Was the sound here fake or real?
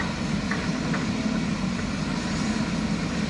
real